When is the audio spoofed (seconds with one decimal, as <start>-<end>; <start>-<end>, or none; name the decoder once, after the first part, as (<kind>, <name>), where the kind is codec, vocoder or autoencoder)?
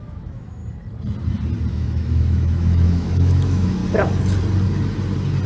0.0-0.6 (autoencoder, DAC-VAE); 1.7-3.8